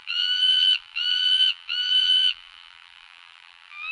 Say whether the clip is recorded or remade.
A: remade